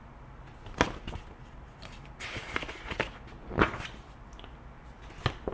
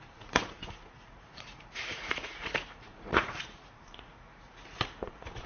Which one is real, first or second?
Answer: first